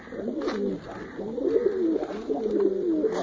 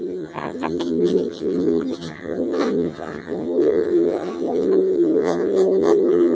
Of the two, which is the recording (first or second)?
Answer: first